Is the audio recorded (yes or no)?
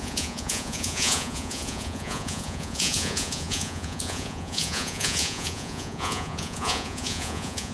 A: no